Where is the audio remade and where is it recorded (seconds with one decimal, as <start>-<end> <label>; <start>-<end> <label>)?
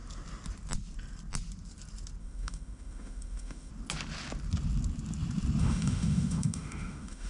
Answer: 0.0-2.2 recorded; 2.2-3.7 remade; 3.7-5.6 recorded; 5.6-7.3 remade